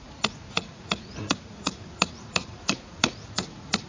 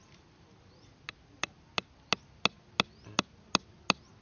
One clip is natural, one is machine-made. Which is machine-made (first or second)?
first